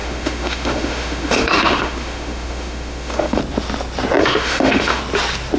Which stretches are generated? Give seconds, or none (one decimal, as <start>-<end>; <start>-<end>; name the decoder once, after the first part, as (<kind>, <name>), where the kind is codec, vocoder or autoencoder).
0.0-3.4 (autoencoder, DAC-VAE); 4.2-5.0